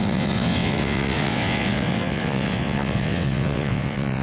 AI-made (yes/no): yes